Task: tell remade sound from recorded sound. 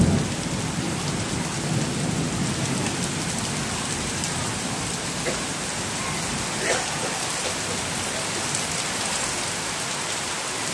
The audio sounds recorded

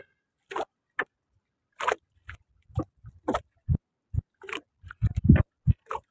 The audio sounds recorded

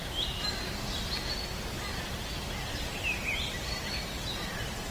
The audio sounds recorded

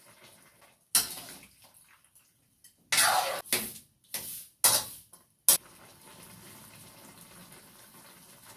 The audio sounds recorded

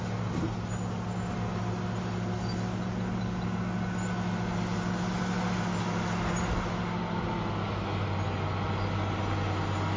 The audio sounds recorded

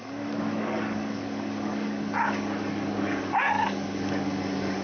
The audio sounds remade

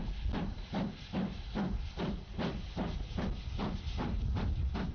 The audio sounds recorded